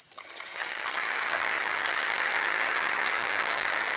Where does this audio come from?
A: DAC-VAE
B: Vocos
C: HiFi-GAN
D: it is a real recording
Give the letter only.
C